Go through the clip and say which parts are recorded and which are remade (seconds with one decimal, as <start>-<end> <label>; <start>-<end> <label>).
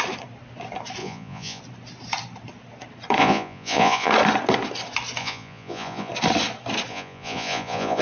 0.0-1.0 recorded; 1.0-1.6 remade; 1.6-3.2 recorded; 3.2-4.1 remade; 4.1-5.2 recorded; 5.2-6.1 remade; 6.1-6.9 recorded; 6.9-8.0 remade